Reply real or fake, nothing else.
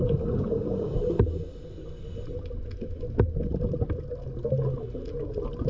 real